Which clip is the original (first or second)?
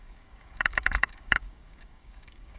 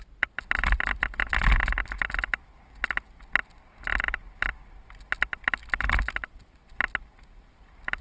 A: second